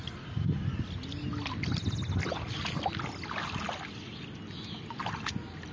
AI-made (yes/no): no